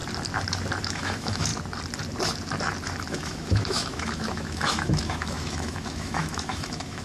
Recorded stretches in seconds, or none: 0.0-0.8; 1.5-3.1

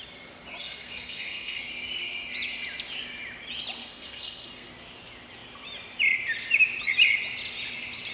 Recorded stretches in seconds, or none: 0.0-0.6; 1.6-3.8; 4.7-8.1

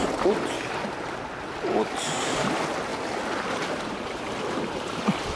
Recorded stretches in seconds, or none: 0.0-5.4

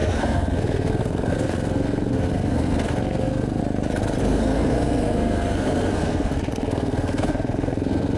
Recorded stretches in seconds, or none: 3.6-4.2

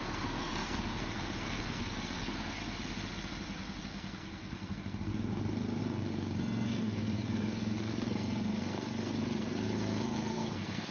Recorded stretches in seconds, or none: 2.6-3.8; 5.1-5.8